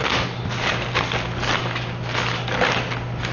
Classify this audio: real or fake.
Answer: real